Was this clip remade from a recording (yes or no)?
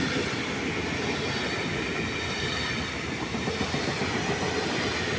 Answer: no